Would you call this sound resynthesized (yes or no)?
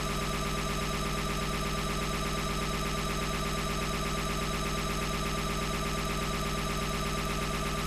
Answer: no